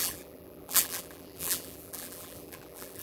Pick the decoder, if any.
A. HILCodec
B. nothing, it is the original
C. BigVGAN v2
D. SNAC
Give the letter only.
C